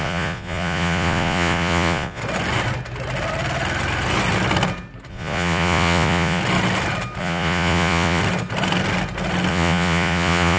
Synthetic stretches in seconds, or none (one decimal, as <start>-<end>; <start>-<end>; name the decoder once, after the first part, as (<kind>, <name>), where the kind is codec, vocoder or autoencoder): 0.0-2.2 (vocoder, Vocos); 5.1-6.4; 7.2-8.2; 9.5-10.6